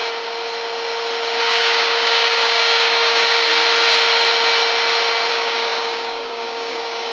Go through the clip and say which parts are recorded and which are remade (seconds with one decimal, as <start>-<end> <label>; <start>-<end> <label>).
0.0-1.4 recorded; 1.4-3.5 remade; 3.5-5.3 recorded; 5.3-7.1 remade